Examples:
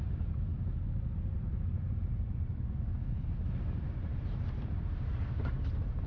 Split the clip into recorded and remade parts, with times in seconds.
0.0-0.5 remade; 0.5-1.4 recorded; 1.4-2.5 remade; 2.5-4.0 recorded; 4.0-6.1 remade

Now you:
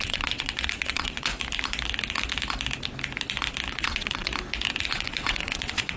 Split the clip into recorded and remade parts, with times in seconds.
0.0-1.3 remade; 1.3-3.7 recorded; 3.7-4.3 remade; 4.3-4.9 recorded; 4.9-6.0 remade

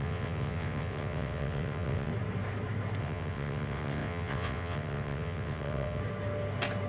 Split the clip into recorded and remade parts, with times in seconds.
0.0-2.1 remade; 2.1-3.0 recorded; 3.0-6.0 remade; 6.0-6.9 recorded

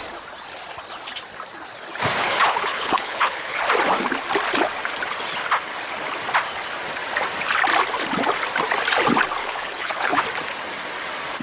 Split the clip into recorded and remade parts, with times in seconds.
0.0-2.2 recorded; 2.2-3.7 remade; 3.7-9.4 recorded; 9.4-10.2 remade; 10.2-11.4 recorded

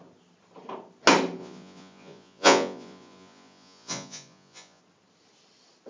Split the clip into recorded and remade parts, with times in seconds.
0.0-1.4 recorded; 1.4-4.8 remade; 4.8-5.9 recorded

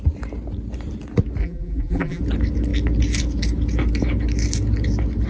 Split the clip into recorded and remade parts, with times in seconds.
0.0-1.4 recorded; 1.4-2.2 remade; 2.2-5.3 recorded

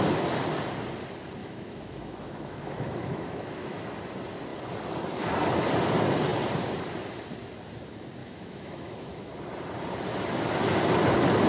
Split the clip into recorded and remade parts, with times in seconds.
0.0-1.4 recorded; 1.4-3.9 remade; 3.9-8.2 recorded; 8.2-9.3 remade; 9.3-11.5 recorded